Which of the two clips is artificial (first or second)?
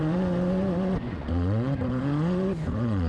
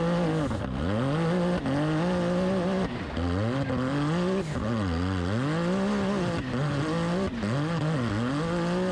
first